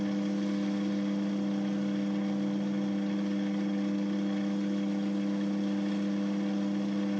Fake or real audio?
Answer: real